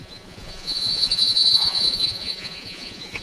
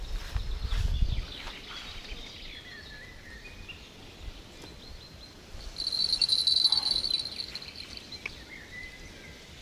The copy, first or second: first